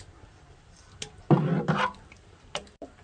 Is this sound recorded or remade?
remade